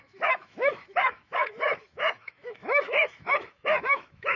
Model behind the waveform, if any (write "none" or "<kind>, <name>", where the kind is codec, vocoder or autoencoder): autoencoder, DAC-VAE